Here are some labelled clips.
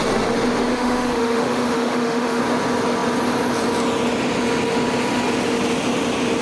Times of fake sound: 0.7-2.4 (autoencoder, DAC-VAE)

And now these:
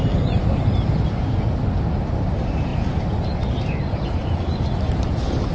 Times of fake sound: none

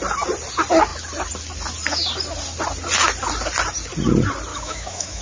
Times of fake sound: 4.5-5.2 (autoencoder, DAC-VAE)

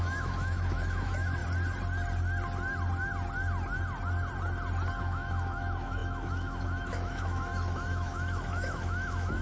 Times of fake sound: 0.0-1.4 (autoencoder, DAC-VAE); 5.0-9.4

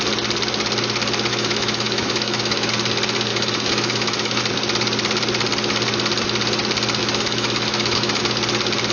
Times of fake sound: 1.3-2.7 (autoencoder, DAC-VAE); 3.3-4.4; 7.0-8.2

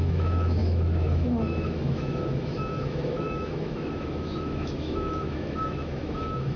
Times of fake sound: 0.0-6.6 (autoencoder, DAC-VAE)

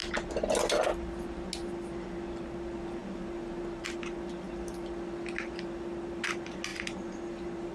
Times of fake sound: none

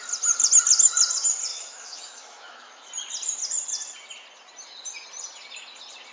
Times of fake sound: 1.5-2.9 (autoencoder, DAC-VAE)